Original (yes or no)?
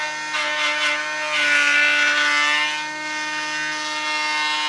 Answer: yes